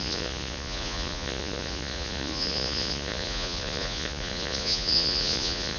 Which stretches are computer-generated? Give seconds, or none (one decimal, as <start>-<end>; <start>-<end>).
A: 0.0-5.8